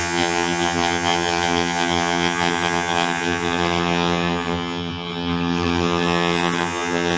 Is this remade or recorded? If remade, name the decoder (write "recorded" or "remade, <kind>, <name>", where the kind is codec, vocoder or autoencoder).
remade, vocoder, HiFi-GAN